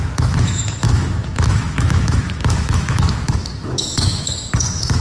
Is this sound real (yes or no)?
no